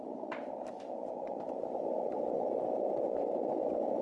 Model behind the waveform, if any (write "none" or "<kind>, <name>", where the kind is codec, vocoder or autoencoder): vocoder, BigVGAN v2